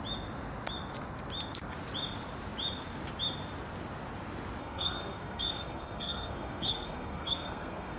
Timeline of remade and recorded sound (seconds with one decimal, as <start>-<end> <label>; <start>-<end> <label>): 0.0-4.6 recorded; 4.6-8.0 remade